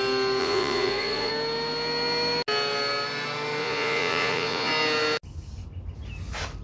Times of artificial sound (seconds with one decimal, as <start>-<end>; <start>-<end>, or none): 0.4-1.3; 3.6-4.7